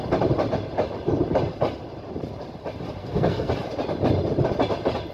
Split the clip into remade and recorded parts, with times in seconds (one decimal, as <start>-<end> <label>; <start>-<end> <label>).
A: 0.0-3.0 recorded; 3.0-3.5 remade; 3.5-5.1 recorded